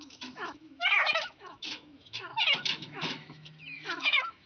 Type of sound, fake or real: fake